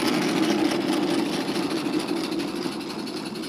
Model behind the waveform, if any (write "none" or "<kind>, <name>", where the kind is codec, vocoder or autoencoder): none